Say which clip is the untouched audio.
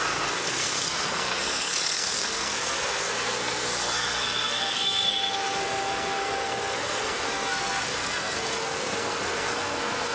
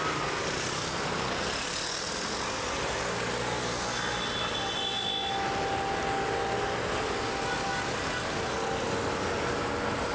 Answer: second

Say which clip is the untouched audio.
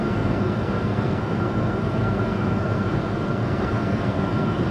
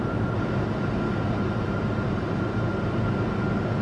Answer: second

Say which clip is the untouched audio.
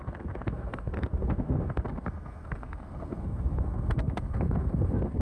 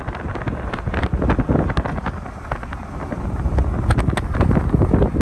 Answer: second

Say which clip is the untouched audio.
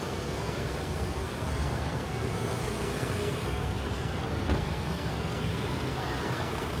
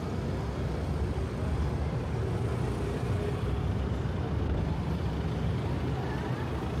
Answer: second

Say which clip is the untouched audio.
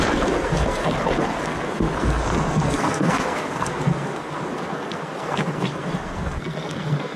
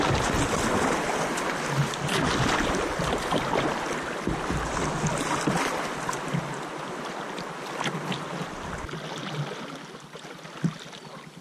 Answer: second